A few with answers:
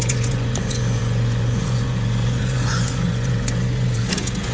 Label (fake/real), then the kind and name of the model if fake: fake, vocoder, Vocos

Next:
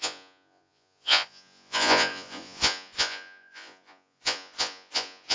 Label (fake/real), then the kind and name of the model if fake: fake, vocoder, Vocos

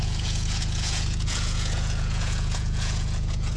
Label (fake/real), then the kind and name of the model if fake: fake, vocoder, Vocos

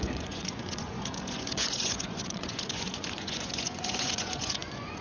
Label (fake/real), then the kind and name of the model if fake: fake, vocoder, Vocos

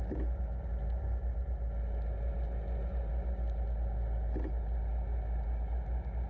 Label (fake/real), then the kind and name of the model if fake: real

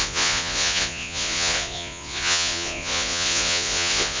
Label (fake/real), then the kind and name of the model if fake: fake, vocoder, Vocos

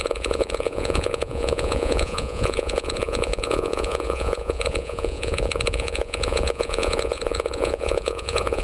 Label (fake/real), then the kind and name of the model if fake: fake, vocoder, Vocos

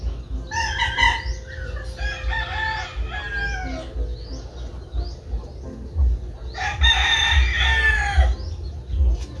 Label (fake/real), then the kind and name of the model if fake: real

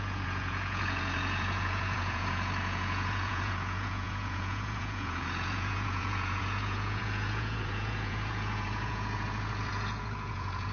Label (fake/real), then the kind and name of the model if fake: fake, vocoder, Vocos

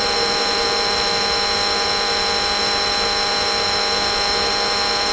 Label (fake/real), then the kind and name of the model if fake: real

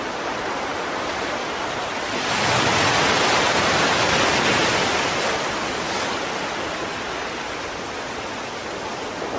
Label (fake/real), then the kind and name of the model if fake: real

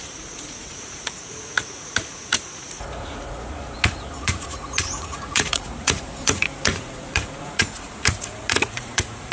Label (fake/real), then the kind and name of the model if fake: fake, vocoder, Vocos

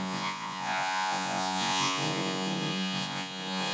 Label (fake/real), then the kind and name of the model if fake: fake, vocoder, Vocos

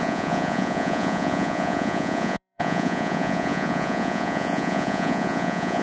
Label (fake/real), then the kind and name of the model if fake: fake, vocoder, Vocos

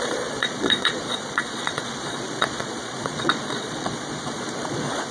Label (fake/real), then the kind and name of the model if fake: fake, vocoder, Vocos